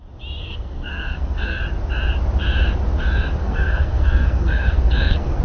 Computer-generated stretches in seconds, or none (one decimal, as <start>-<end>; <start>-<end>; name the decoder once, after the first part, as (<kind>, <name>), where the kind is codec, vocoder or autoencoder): 0.4-1.6 (codec, SNAC); 3.4-5.4